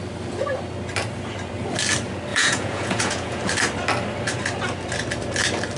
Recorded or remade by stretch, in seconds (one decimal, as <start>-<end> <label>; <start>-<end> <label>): 0.0-2.3 recorded; 2.3-3.4 remade; 3.4-5.8 recorded